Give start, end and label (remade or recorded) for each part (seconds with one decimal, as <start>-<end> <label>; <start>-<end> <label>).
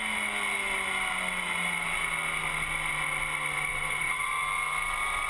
0.0-3.7 recorded; 3.7-4.4 remade; 4.4-5.3 recorded